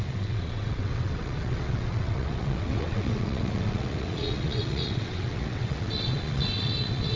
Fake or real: fake